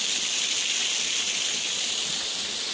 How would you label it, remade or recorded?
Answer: recorded